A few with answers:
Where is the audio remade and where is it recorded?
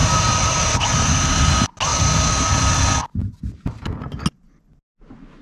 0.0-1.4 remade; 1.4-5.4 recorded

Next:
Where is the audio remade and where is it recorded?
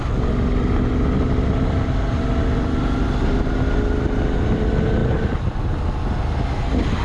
0.0-7.0 recorded